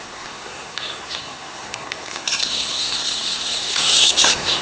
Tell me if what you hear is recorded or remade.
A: remade